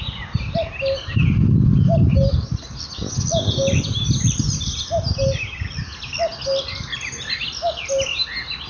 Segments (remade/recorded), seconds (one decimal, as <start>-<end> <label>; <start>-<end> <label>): 0.0-8.7 recorded